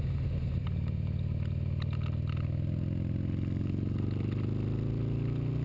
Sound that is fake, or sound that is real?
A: real